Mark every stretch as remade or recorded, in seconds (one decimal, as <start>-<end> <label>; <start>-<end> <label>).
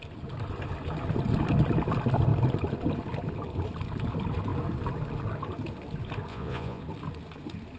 0.0-6.3 recorded; 6.3-6.8 remade; 6.8-7.8 recorded